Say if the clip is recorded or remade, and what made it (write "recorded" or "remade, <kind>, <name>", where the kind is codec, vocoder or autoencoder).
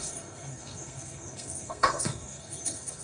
remade, codec, SNAC